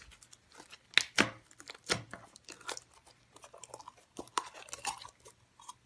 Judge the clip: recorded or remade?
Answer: recorded